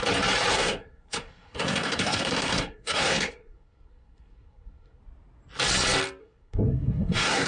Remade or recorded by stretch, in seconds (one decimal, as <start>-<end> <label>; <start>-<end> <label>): 0.0-0.5 recorded; 0.5-5.0 remade; 5.0-6.2 recorded; 6.2-7.5 remade